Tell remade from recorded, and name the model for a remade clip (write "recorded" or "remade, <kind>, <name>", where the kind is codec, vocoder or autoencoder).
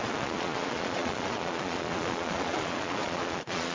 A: remade, vocoder, Vocos